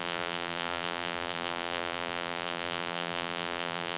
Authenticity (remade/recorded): remade